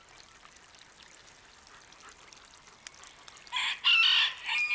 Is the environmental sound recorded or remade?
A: recorded